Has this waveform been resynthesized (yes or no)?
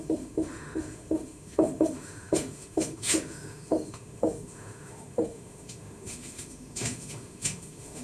yes